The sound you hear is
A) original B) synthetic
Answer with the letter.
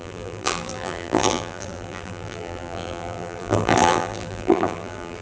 B